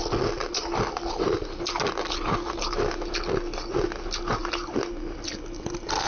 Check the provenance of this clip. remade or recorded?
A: recorded